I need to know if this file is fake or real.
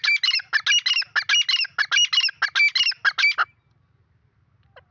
real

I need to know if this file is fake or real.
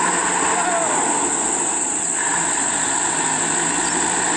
real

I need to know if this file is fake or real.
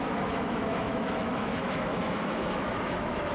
fake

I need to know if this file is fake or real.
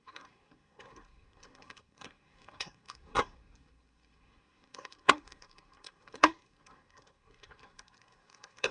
fake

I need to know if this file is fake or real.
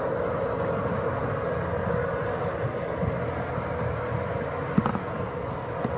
real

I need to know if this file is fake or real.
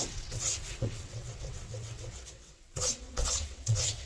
fake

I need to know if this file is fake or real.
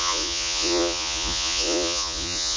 fake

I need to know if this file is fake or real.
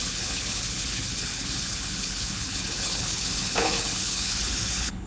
fake